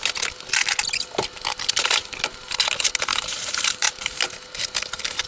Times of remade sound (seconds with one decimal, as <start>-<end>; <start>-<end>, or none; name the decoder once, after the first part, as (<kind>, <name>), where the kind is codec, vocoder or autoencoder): 3.1-4.2 (vocoder, BigVGAN v2)